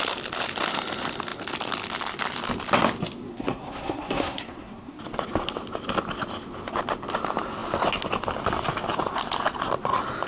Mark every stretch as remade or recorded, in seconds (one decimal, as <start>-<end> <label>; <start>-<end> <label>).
0.0-3.3 recorded; 3.3-5.0 remade; 5.0-10.3 recorded